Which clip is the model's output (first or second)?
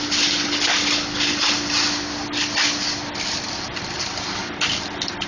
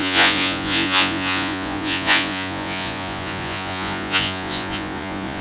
second